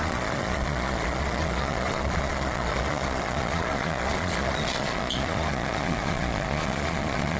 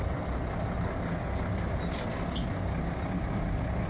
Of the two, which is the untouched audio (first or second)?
second